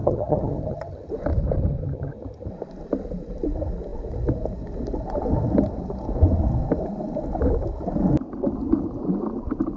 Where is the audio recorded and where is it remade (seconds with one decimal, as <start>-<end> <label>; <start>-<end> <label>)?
0.0-1.1 remade; 1.1-1.8 recorded; 1.8-2.5 remade; 2.5-9.8 recorded